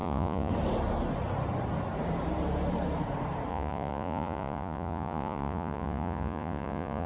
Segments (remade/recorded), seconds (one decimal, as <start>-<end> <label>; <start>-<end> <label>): 0.0-0.5 remade; 0.5-3.5 recorded; 3.5-7.1 remade